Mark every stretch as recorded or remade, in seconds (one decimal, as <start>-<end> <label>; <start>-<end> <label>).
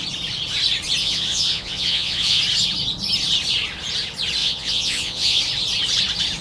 0.0-1.0 recorded; 1.0-2.4 remade; 2.4-4.4 recorded; 4.4-5.4 remade; 5.4-6.4 recorded